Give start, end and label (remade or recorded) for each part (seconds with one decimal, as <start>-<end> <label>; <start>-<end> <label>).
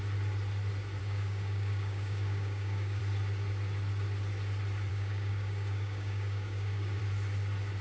0.0-1.0 recorded; 1.0-3.0 remade; 3.0-4.9 recorded; 4.9-7.0 remade; 7.0-7.8 recorded